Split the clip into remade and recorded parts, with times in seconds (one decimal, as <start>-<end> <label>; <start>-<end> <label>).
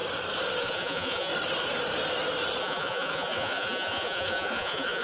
0.0-0.6 recorded; 0.6-1.3 remade; 1.3-2.6 recorded; 2.6-5.0 remade